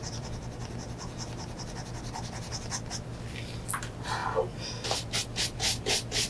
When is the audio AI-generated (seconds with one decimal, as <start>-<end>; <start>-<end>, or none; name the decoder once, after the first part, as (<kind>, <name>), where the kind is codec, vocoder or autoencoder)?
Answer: none